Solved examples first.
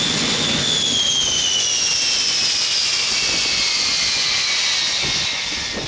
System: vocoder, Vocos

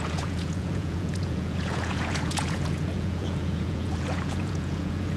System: vocoder, Vocos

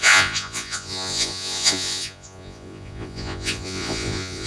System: vocoder, Vocos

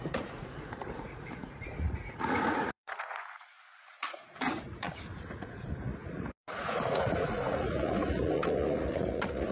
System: vocoder, Vocos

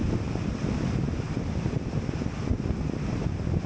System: none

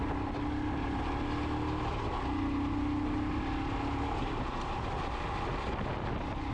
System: none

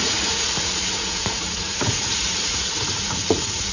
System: vocoder, Vocos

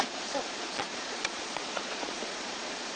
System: vocoder, Vocos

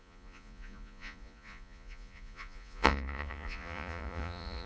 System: vocoder, Vocos